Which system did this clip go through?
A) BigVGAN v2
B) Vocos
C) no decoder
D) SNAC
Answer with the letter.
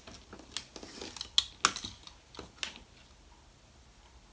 C